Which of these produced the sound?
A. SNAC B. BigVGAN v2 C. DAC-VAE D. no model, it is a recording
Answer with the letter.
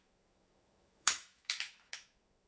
C